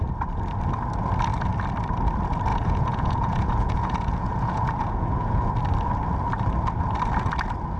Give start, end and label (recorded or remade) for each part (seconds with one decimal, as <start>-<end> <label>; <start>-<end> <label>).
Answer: 0.0-2.5 recorded; 2.5-5.5 remade; 5.5-7.8 recorded